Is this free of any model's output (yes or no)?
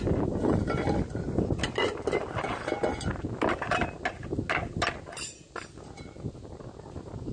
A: yes